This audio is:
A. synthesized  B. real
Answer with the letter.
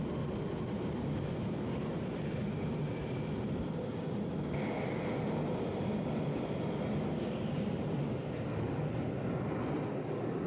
B